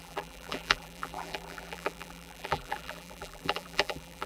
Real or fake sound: fake